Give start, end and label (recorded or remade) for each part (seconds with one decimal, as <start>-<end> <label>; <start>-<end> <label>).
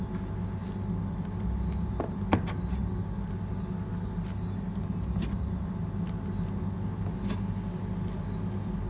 0.0-8.9 recorded